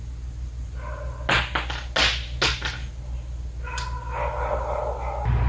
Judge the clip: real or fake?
real